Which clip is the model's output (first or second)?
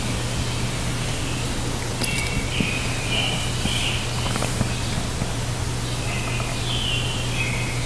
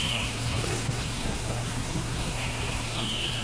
second